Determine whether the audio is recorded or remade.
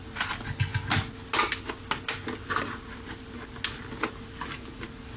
recorded